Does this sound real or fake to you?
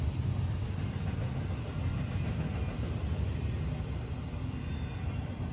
real